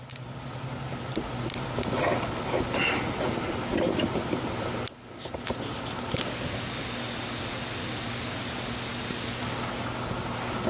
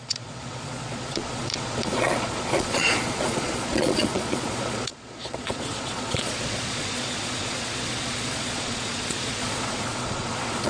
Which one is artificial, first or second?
second